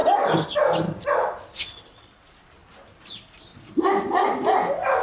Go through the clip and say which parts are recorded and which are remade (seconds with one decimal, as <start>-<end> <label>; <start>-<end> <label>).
0.0-5.0 recorded